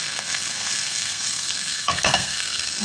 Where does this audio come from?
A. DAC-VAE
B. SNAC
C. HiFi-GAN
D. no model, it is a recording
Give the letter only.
B